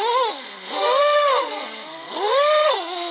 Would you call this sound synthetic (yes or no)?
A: yes